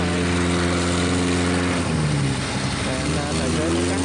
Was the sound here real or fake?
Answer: real